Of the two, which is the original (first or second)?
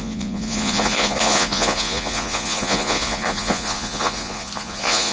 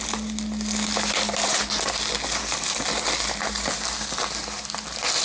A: second